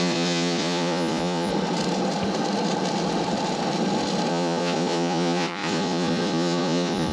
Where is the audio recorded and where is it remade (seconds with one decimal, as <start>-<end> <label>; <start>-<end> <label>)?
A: 0.0-1.5 remade; 1.5-4.3 recorded; 4.3-7.1 remade

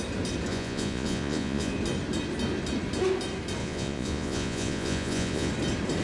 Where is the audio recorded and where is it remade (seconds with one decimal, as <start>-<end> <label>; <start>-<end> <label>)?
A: 0.0-0.5 recorded; 0.5-1.7 remade; 1.7-3.6 recorded; 3.6-5.5 remade; 5.5-6.0 recorded

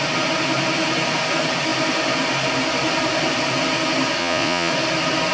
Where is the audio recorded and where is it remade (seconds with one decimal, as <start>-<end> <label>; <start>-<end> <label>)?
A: 0.0-4.2 recorded; 4.2-4.7 remade; 4.7-5.3 recorded

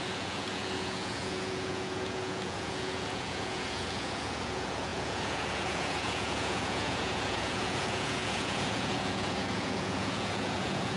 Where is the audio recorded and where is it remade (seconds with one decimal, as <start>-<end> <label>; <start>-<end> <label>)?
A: 0.0-11.0 remade

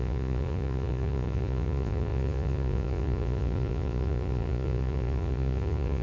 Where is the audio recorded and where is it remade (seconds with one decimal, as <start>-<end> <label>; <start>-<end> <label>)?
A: 0.0-6.0 remade

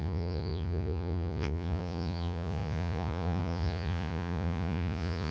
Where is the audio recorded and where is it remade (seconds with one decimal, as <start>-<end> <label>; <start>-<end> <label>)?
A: 0.0-5.3 remade

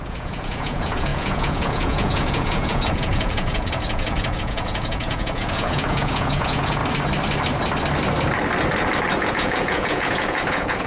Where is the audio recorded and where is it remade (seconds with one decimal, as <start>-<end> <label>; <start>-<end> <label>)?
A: 0.0-6.8 remade; 6.8-9.3 recorded; 9.3-10.9 remade

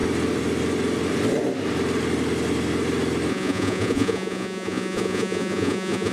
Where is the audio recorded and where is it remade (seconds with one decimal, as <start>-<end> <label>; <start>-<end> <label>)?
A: 0.0-3.3 recorded; 3.3-6.1 remade